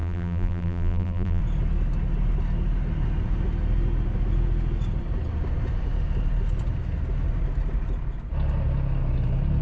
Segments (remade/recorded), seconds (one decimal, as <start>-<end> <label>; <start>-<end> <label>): 0.0-1.4 remade; 1.4-9.6 recorded